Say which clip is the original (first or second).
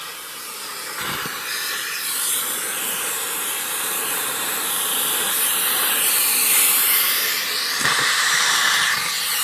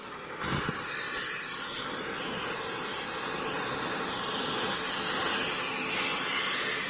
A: second